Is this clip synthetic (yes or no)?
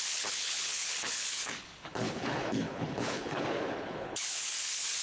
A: yes